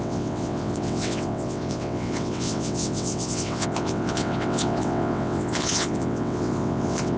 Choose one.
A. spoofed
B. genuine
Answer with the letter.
A